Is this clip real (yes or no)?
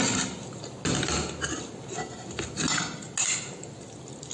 yes